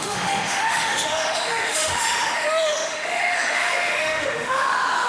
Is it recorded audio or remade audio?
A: remade